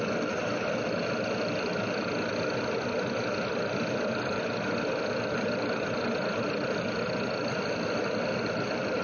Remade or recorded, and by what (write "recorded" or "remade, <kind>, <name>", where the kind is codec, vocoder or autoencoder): recorded